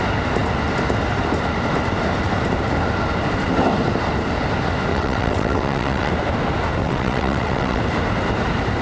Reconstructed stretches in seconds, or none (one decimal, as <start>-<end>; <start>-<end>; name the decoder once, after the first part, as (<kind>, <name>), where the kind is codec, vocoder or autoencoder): 4.9-6.1 (vocoder, WaveNeXt); 6.8-7.8